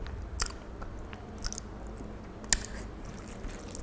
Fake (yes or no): no